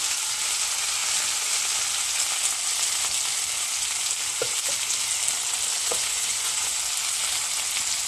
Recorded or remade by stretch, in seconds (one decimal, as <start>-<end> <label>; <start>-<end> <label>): 0.0-5.8 recorded; 5.8-6.8 remade; 6.8-8.1 recorded